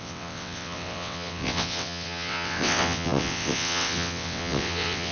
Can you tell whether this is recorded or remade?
remade